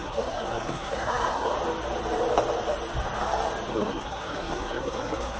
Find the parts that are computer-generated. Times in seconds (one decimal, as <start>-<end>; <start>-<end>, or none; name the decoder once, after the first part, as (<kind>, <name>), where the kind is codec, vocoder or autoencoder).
0.0-1.5 (codec, SNAC); 3.7-5.4